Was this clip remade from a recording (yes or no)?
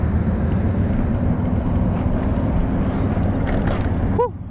no